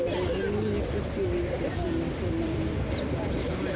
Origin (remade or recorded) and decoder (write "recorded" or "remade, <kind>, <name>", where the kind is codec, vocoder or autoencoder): recorded